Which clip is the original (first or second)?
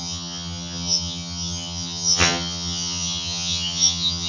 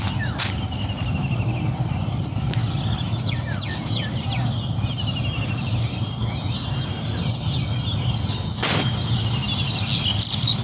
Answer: second